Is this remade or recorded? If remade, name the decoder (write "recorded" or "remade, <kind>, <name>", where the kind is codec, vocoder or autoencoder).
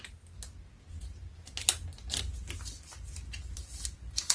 recorded